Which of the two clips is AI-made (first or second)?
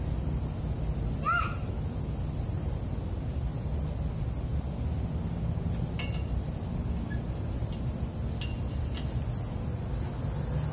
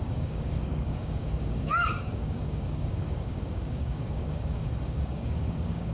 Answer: second